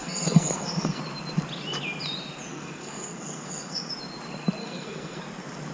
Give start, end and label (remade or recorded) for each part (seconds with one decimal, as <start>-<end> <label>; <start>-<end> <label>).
0.0-1.0 remade; 1.0-2.5 recorded; 2.5-3.9 remade; 3.9-4.6 recorded; 4.6-5.2 remade; 5.2-5.7 recorded